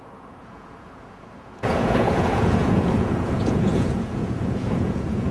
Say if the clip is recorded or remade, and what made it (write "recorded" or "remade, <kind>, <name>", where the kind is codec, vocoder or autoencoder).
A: remade, vocoder, Vocos